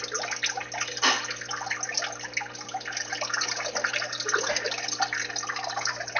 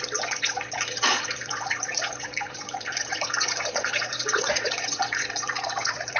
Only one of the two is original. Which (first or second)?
first